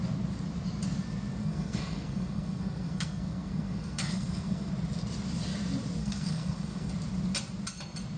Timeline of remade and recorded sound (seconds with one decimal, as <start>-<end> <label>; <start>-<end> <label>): 0.0-1.4 recorded; 1.4-4.7 remade; 4.7-6.0 recorded; 6.0-6.9 remade; 6.9-8.2 recorded

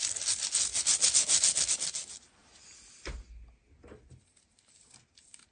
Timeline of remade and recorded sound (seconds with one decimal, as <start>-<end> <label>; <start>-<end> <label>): 0.0-5.5 recorded